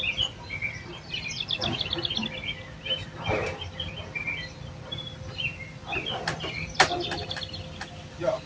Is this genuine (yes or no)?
yes